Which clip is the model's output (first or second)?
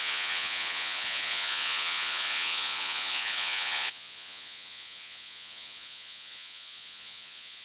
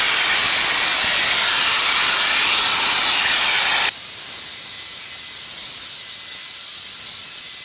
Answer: first